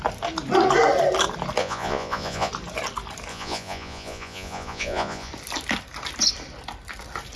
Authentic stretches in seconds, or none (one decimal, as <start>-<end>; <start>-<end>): 0.0-1.6; 2.5-3.3; 5.3-7.4